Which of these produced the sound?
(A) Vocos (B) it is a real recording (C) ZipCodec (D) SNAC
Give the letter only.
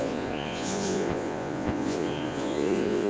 A